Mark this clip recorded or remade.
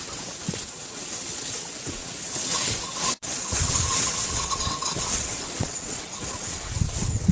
remade